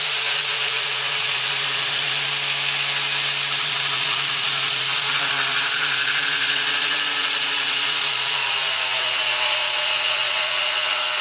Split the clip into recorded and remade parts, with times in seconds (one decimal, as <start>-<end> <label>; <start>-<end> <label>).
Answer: 0.0-2.3 remade; 2.3-3.6 recorded; 3.6-11.2 remade